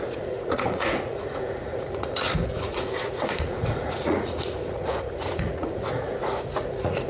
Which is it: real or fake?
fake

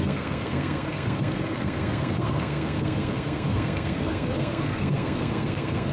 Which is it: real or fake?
fake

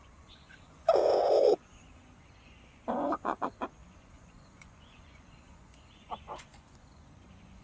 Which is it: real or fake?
fake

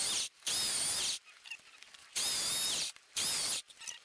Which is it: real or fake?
real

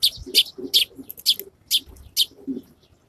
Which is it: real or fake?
real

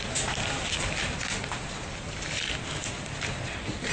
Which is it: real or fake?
real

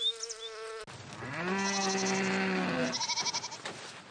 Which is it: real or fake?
real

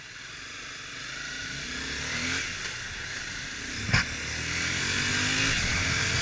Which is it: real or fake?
real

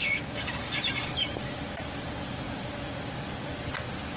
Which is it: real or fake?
real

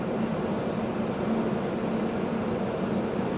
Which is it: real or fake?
real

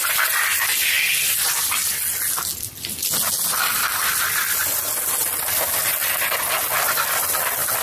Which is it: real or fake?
real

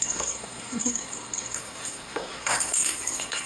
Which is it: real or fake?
fake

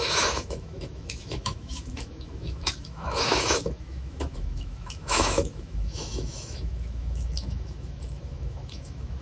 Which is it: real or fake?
fake